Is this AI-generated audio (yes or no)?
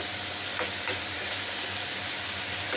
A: no